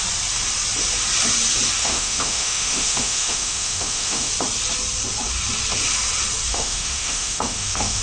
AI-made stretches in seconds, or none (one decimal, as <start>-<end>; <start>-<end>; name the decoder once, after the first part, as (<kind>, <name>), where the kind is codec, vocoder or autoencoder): 1.8-4.3 (autoencoder, DAC-VAE); 6.5-8.0